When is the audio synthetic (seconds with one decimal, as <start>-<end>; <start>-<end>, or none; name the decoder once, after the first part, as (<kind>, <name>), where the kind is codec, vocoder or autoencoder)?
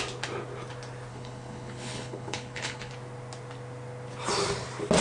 1.1-2.9 (codec, HILCodec)